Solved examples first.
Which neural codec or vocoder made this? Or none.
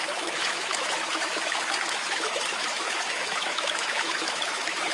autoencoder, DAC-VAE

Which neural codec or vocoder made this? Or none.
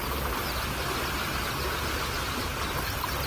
none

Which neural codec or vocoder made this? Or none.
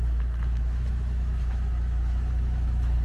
autoencoder, DAC-VAE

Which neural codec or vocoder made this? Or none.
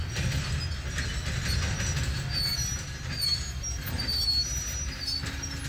none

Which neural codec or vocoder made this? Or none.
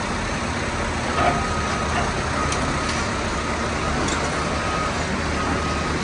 none